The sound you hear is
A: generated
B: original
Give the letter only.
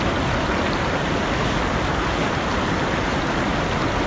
B